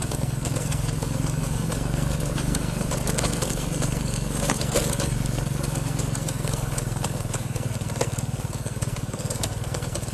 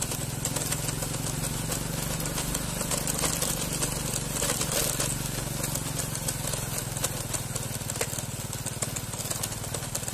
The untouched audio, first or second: second